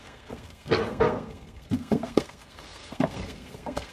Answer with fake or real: fake